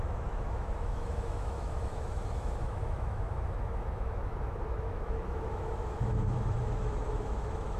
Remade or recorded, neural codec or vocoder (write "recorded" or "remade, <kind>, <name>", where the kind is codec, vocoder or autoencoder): remade, autoencoder, DAC-VAE